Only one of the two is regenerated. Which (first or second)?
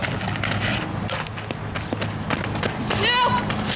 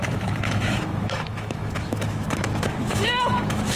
second